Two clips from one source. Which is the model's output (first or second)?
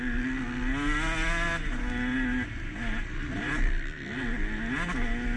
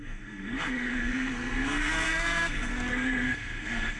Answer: second